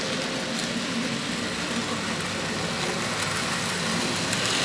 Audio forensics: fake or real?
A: real